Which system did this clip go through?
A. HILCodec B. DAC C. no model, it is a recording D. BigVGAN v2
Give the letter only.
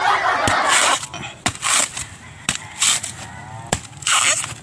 C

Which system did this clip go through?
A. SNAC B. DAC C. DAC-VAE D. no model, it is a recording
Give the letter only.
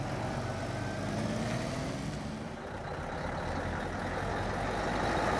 D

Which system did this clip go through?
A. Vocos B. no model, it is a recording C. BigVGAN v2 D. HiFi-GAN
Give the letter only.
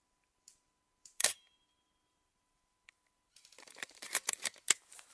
C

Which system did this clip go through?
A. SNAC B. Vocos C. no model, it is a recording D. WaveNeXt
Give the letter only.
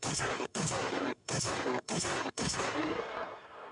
A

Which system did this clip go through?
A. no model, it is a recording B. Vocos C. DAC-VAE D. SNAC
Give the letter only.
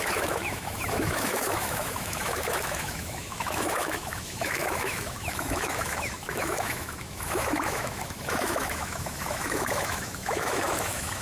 C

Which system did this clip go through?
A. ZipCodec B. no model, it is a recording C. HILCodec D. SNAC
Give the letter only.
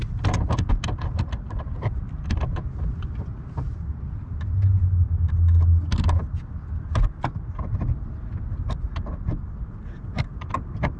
B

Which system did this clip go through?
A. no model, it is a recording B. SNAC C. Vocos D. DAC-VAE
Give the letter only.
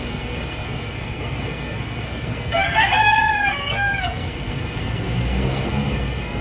B